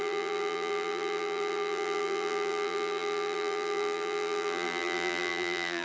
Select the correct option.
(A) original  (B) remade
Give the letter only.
B